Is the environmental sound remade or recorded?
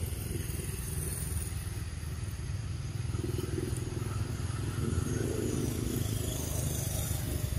recorded